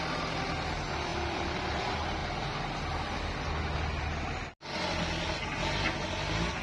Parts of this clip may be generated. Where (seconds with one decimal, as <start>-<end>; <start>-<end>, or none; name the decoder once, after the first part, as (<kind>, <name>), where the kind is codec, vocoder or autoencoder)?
none